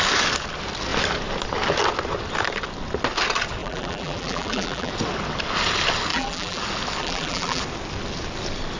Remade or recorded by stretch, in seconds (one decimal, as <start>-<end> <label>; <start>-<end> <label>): 0.0-3.6 recorded; 3.6-4.9 remade; 4.9-6.1 recorded; 6.1-6.6 remade; 6.6-7.0 recorded; 7.0-7.6 remade; 7.6-8.8 recorded